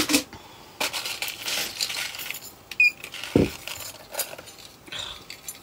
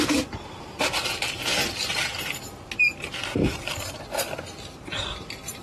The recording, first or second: first